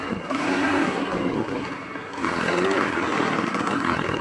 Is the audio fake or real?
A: fake